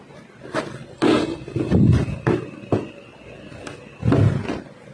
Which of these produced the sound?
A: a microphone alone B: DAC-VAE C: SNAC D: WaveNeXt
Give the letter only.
A